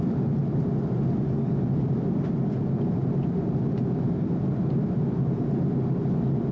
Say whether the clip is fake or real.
real